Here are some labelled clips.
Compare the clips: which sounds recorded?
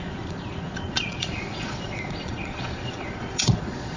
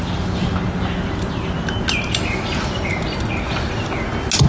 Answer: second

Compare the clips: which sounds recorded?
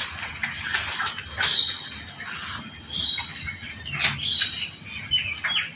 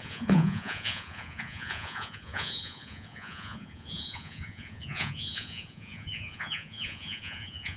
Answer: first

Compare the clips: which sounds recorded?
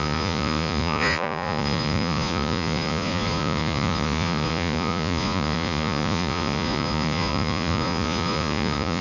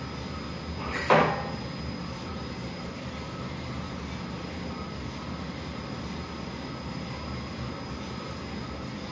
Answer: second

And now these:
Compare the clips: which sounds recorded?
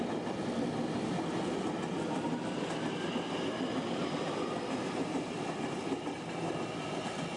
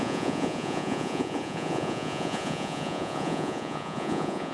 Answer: first